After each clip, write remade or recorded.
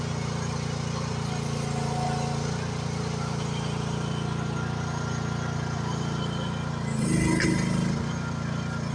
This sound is recorded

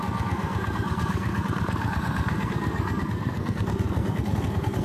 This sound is remade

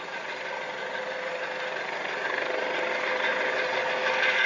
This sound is recorded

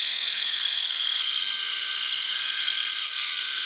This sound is remade